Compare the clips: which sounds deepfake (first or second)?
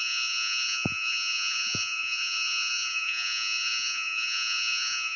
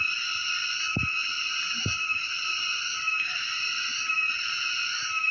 first